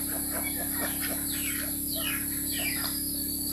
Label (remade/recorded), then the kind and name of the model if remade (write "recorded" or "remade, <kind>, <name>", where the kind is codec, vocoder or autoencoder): recorded